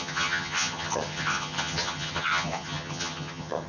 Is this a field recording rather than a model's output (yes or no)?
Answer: no